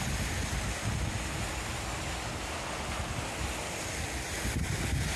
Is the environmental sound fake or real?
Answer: real